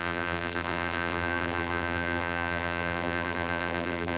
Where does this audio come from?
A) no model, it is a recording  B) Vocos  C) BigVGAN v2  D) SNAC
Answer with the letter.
C